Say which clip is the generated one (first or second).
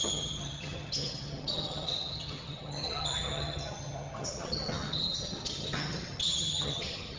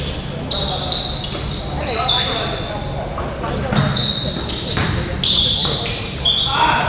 first